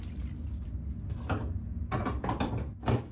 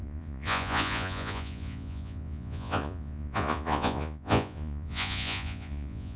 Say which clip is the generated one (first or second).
second